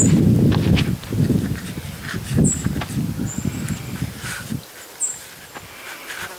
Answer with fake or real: real